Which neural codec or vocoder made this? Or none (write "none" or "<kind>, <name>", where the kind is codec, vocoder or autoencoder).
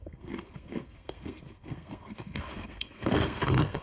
codec, SNAC